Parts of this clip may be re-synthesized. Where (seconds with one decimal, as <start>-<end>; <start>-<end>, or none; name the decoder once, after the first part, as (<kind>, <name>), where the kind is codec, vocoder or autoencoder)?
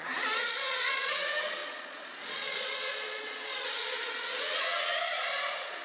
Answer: 0.0-5.8 (vocoder, Vocos)